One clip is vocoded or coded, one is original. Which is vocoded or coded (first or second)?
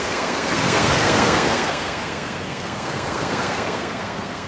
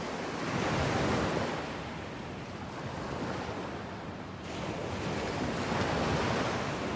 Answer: first